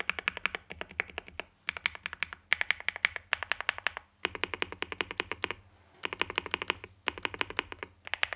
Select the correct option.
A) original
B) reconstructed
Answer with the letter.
A